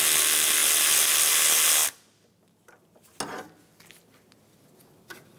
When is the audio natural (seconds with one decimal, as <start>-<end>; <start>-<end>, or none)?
0.0-5.4